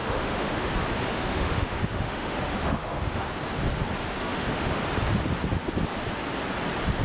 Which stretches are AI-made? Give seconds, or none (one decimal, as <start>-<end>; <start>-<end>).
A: 0.0-0.7; 1.1-3.3; 4.1-4.8

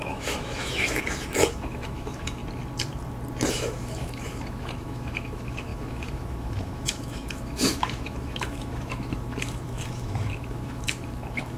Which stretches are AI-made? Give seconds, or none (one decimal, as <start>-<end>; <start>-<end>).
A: 0.0-2.4; 3.5-11.6

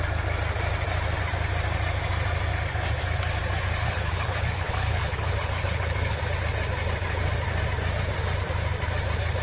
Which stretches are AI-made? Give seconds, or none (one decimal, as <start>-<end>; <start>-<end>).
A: 3.8-6.2